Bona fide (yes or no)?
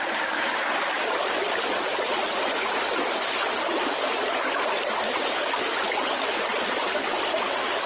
no